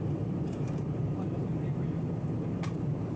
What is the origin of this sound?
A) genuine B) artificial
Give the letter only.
B